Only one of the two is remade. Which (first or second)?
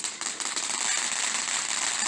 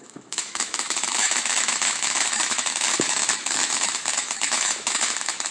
second